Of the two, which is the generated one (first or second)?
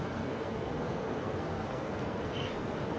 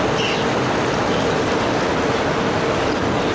first